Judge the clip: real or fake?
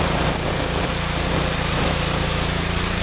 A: real